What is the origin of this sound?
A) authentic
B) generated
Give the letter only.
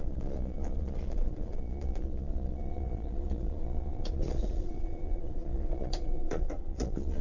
B